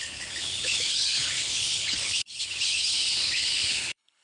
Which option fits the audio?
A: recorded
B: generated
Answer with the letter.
B